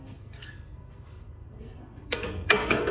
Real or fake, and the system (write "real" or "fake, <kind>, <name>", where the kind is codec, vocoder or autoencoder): fake, codec, SNAC